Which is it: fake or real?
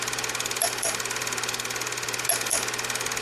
real